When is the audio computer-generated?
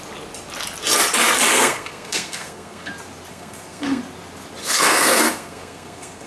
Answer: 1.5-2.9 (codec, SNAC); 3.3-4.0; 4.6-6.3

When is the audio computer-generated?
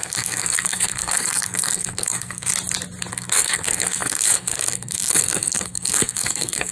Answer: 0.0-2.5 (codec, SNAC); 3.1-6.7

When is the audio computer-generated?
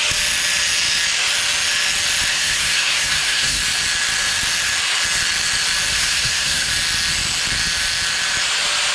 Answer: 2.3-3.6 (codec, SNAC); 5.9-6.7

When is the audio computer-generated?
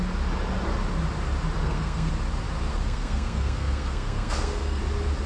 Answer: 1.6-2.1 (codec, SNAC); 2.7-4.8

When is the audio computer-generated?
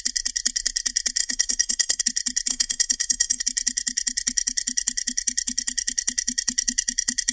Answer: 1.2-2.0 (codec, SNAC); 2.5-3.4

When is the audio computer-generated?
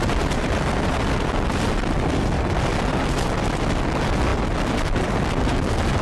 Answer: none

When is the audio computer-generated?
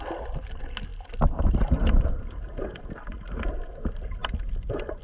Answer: none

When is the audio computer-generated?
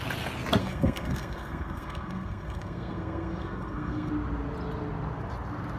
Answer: 0.6-4.1 (codec, SNAC)